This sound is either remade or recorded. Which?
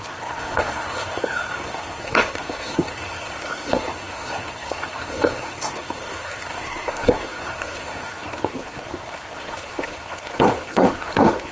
remade